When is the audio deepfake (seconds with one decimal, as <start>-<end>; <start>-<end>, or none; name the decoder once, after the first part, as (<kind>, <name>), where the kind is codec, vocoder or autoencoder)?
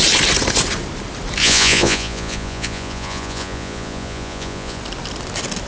1.4-4.8 (vocoder, Vocos)